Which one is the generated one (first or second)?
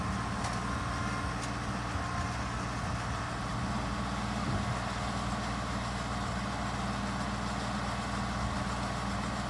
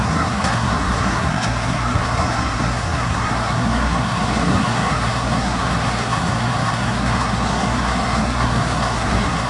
second